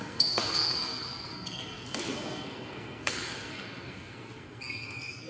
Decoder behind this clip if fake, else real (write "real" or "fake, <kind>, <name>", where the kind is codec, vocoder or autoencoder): fake, codec, SNAC